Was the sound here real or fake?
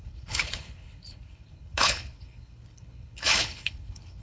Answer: fake